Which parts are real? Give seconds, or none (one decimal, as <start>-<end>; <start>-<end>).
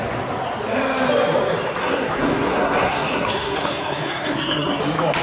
0.0-1.8; 4.8-5.2